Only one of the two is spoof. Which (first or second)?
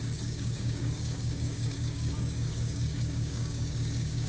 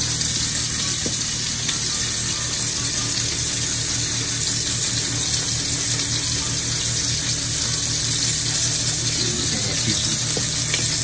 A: first